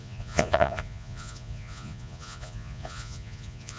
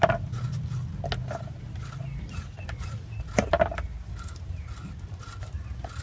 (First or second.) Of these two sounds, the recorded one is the second